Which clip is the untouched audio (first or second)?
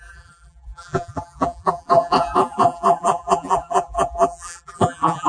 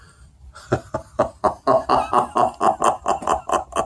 second